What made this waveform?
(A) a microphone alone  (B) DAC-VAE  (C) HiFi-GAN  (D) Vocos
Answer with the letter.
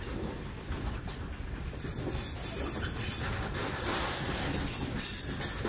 A